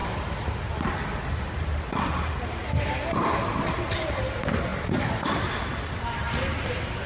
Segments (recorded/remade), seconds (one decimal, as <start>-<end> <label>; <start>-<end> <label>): 0.0-4.7 recorded; 4.7-5.4 remade; 5.4-7.1 recorded